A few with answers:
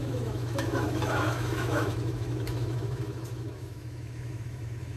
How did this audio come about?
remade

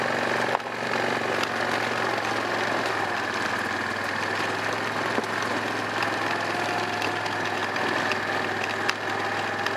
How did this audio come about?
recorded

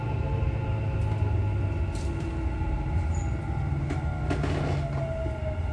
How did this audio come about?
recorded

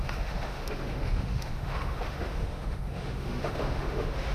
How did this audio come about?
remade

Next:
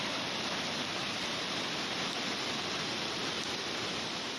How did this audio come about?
recorded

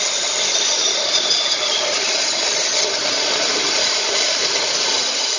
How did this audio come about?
recorded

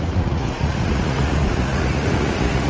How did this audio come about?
remade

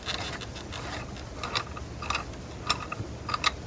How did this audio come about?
recorded